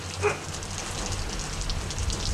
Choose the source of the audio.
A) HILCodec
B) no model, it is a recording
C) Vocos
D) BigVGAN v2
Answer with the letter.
B